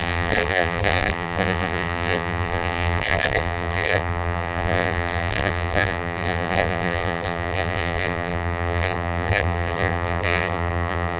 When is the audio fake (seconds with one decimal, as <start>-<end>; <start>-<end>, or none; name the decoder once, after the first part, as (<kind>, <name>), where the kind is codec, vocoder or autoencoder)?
0.0-11.2 (vocoder, BigVGAN v2)